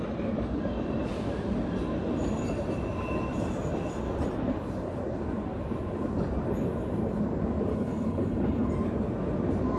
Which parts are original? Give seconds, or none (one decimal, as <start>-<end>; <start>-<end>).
0.0-7.7; 8.7-9.8